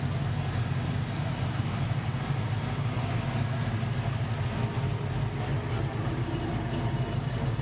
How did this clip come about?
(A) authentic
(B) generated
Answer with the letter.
A